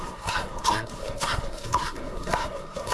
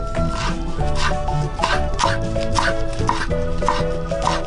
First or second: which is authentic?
second